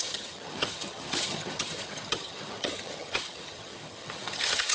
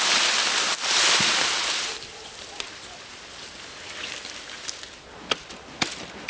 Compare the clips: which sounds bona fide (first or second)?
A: second